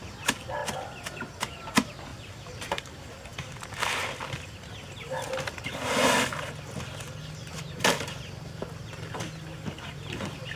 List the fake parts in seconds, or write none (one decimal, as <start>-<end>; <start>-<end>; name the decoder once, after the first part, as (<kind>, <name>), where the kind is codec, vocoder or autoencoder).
none